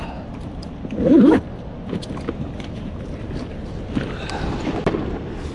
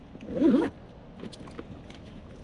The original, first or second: second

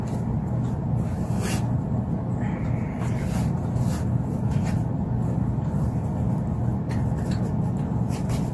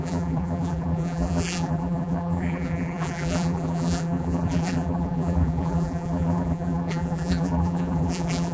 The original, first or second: first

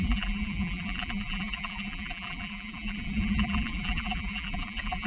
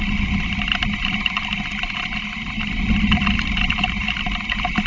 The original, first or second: second